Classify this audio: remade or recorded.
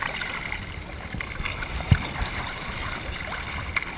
recorded